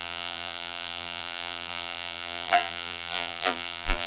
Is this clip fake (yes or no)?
yes